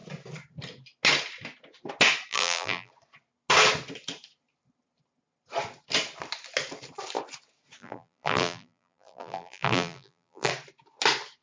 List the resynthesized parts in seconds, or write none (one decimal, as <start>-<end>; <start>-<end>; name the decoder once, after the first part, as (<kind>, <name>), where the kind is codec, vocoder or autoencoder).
2.3-2.9 (vocoder, BigVGAN v2); 7.8-10.5